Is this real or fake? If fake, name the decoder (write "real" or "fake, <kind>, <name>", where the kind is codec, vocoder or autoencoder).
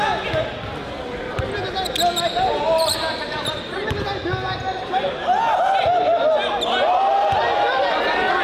real